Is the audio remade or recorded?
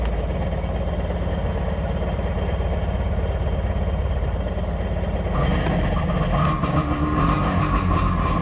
recorded